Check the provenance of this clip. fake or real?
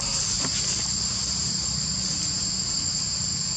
real